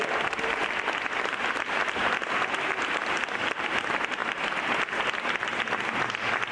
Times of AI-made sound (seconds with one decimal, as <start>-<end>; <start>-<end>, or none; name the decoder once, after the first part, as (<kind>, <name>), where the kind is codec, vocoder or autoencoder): none